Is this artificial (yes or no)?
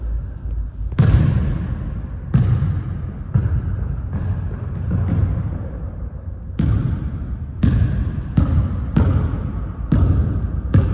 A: no